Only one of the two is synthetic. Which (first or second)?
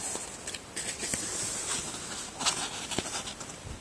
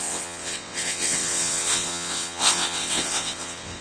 second